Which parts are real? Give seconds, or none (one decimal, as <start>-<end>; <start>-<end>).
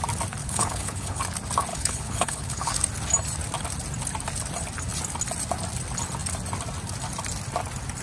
0.0-0.4; 1.2-1.7; 2.7-8.0